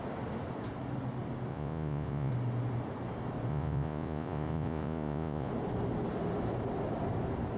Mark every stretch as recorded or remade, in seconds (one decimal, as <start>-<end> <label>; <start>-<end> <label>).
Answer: 0.0-1.5 recorded; 1.5-2.3 remade; 2.3-3.5 recorded; 3.5-5.5 remade; 5.5-7.6 recorded